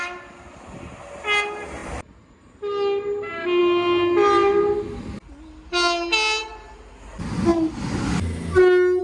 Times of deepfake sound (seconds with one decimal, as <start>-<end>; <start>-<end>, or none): 1.8-2.4